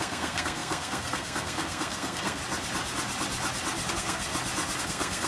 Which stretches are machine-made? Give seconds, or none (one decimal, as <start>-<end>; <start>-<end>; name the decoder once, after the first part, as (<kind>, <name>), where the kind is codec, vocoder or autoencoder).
0.0-2.4 (codec, SNAC); 3.9-4.3; 4.8-5.3